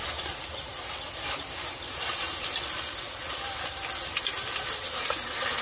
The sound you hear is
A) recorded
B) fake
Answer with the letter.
A